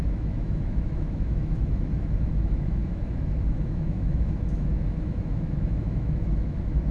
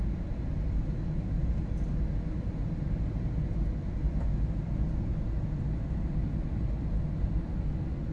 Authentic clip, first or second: second